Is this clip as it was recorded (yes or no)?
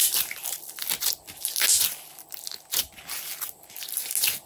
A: yes